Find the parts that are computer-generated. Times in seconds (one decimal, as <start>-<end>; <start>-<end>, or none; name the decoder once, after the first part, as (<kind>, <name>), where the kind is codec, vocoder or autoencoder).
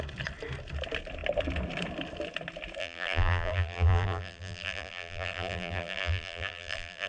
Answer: 2.8-7.1 (vocoder, BigVGAN v2)